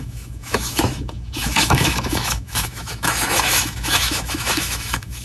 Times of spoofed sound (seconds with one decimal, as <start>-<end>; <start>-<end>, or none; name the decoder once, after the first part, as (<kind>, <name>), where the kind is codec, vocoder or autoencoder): 0.0-5.2 (autoencoder, DAC-VAE)